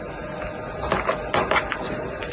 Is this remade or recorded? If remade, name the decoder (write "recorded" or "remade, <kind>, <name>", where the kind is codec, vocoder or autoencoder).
recorded